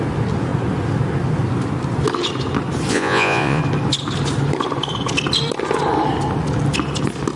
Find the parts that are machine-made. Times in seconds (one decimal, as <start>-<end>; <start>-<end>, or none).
2.9-3.6